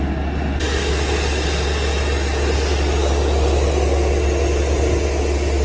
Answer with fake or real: real